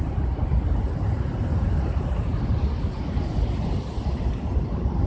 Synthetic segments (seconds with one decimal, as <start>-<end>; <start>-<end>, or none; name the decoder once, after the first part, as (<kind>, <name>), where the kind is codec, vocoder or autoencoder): none